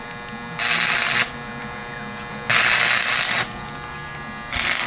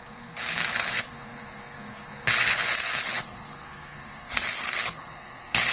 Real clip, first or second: first